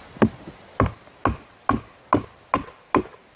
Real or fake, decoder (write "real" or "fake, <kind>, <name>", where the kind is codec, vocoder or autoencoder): real